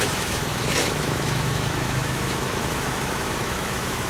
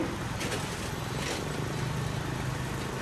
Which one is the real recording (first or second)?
second